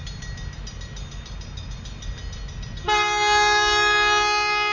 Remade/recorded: recorded